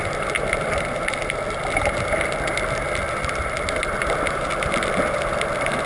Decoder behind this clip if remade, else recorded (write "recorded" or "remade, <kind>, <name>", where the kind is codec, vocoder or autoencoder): recorded